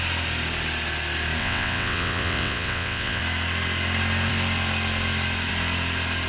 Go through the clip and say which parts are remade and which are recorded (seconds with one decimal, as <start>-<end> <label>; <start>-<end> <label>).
0.0-1.4 recorded; 1.4-3.2 remade; 3.2-6.3 recorded